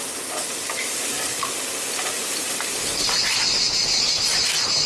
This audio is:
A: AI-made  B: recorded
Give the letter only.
B